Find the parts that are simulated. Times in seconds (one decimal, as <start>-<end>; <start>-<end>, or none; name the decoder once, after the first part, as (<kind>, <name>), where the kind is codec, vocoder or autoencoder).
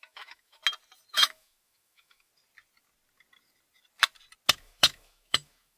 0.0-0.6 (autoencoder, DAC-VAE); 1.1-2.3; 4.5-5.8